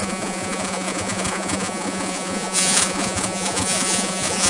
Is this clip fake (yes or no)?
yes